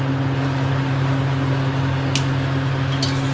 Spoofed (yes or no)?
no